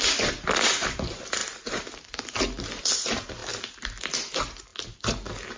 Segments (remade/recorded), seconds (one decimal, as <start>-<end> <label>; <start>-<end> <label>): 0.0-5.6 recorded